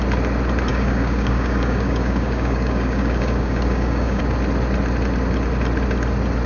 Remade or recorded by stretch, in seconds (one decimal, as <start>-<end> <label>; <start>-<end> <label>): 0.0-0.7 recorded; 0.7-4.2 remade; 4.2-6.5 recorded